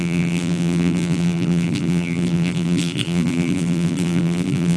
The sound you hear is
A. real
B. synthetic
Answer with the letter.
B